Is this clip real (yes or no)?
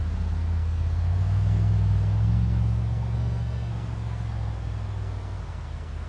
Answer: no